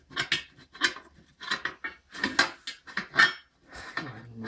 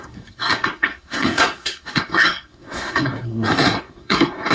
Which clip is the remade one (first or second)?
second